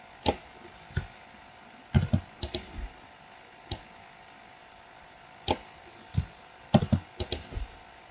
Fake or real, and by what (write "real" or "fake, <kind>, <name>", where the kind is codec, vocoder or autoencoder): real